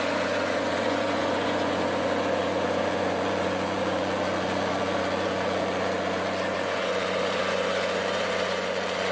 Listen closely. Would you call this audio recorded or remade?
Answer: remade